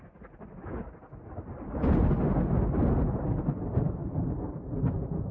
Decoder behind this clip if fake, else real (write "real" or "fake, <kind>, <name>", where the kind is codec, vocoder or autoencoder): real